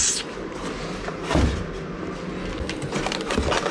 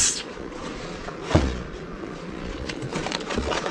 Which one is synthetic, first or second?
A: second